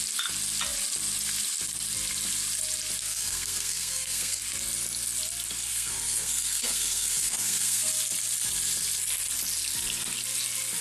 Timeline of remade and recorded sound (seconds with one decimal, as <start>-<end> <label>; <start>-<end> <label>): 0.0-3.0 recorded; 3.0-4.4 remade; 4.4-5.7 recorded; 5.7-7.9 remade; 7.9-10.8 recorded